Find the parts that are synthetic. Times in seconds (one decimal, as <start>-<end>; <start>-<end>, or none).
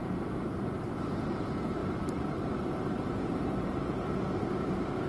0.0-1.1; 1.8-5.1